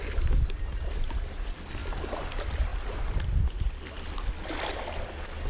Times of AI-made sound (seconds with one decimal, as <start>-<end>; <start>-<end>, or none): none